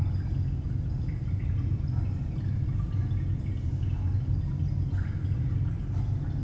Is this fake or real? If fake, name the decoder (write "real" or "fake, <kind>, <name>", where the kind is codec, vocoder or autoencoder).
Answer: real